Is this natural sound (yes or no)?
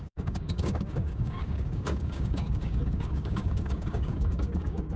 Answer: no